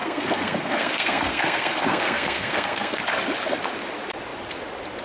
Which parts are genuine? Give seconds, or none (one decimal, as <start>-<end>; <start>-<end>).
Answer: 3.0-5.0